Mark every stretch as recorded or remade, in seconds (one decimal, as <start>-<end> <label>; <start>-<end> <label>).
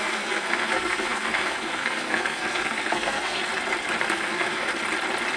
0.0-3.4 remade; 3.4-4.0 recorded; 4.0-4.7 remade; 4.7-5.4 recorded